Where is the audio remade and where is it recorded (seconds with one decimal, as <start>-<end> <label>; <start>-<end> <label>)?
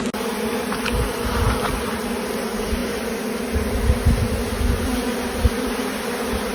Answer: 0.0-6.5 recorded